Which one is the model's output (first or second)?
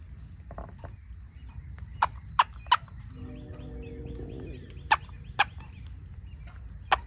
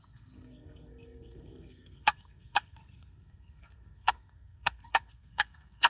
second